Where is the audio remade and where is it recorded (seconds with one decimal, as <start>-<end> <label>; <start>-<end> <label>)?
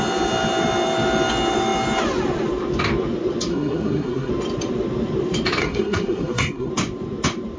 0.0-3.5 recorded; 3.5-4.3 remade; 4.3-5.6 recorded; 5.6-6.7 remade; 6.7-7.6 recorded